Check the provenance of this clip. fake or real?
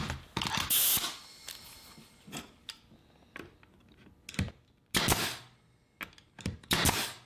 real